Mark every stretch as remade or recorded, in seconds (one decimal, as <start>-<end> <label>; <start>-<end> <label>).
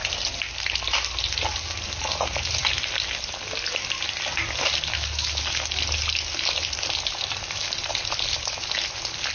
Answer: 0.0-9.3 recorded